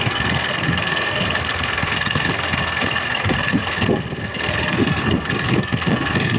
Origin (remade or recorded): remade